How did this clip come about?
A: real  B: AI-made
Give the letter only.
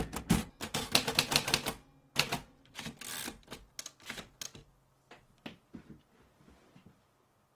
A